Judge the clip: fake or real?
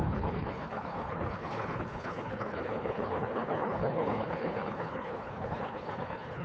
fake